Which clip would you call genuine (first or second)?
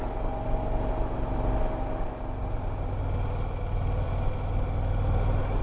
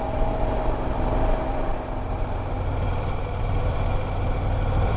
first